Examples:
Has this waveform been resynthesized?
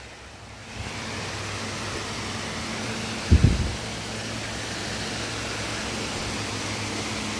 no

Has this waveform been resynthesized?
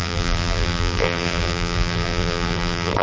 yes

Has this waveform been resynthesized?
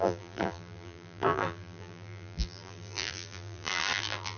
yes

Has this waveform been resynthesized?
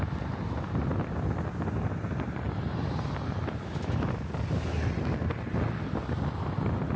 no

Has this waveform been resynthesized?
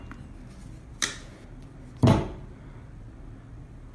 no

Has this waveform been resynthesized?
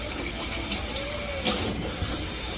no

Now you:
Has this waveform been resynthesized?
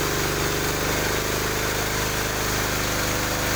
no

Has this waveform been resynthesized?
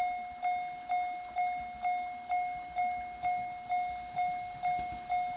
no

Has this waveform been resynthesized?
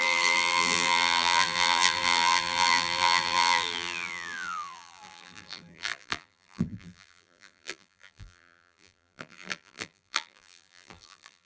yes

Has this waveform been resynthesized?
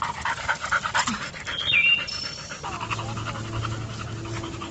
no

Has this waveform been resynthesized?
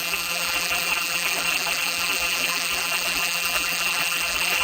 yes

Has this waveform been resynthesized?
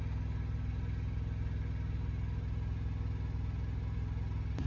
no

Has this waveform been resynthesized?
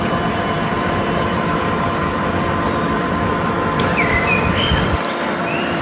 yes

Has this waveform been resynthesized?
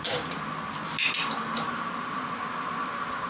no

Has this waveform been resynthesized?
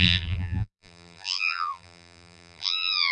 yes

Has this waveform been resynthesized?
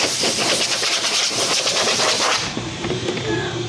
yes